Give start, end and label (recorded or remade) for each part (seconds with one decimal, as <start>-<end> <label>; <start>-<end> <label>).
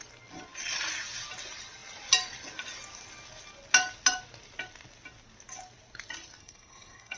0.0-6.4 recorded; 6.4-7.2 remade